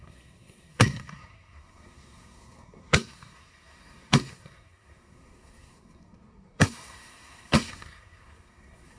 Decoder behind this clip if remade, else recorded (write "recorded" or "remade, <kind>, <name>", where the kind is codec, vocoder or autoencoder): remade, codec, SNAC